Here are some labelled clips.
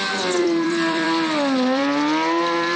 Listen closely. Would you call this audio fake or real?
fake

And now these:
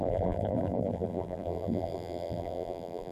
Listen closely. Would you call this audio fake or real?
fake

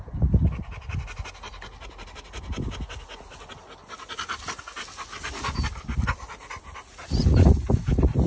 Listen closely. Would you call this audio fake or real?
real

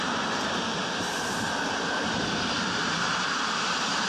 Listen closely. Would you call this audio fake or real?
fake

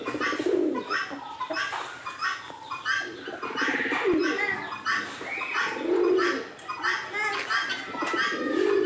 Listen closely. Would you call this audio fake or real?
real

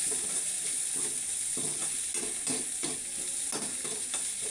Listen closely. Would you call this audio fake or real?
real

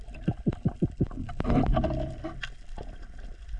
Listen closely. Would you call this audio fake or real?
fake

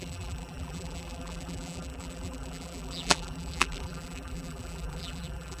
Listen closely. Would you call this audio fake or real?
fake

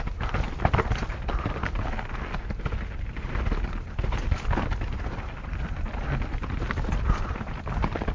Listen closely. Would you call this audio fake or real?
real